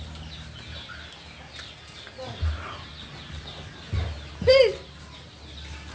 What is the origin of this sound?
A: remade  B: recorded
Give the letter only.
B